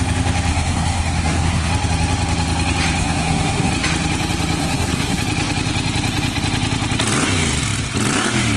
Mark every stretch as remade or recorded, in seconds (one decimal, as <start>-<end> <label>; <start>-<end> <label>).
0.0-0.5 recorded; 0.5-1.7 remade; 1.7-3.0 recorded; 3.0-3.7 remade; 3.7-4.6 recorded; 4.6-5.2 remade; 5.2-8.6 recorded